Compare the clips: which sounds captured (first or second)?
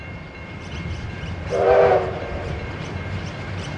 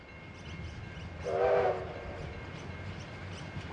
second